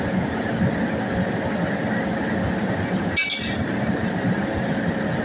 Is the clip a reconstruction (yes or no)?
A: no